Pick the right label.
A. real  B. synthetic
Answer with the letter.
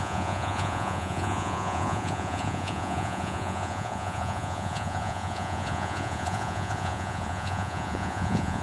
B